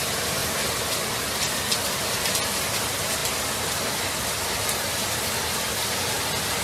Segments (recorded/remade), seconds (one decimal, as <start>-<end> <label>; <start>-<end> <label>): 0.0-0.4 remade; 0.4-2.8 recorded; 2.8-3.2 remade; 3.2-6.6 recorded